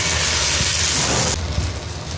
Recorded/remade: recorded